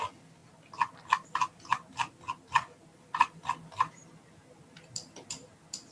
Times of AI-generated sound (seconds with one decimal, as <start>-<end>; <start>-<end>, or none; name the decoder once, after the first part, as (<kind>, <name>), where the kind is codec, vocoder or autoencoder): none